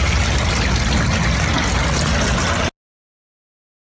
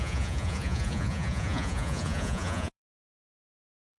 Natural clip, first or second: first